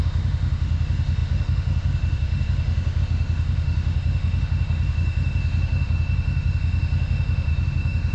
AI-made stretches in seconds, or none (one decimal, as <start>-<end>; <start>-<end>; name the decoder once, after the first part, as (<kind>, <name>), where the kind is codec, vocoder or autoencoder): 0.0-8.1 (autoencoder, DAC-VAE)